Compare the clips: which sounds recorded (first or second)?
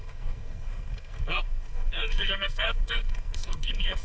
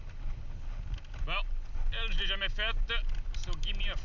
second